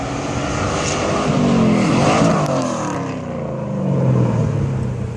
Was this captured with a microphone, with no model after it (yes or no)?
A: yes